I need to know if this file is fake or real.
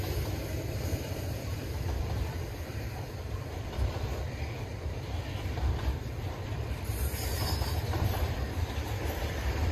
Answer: fake